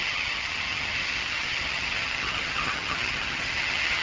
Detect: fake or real fake